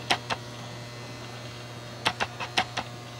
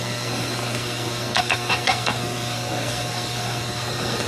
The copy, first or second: second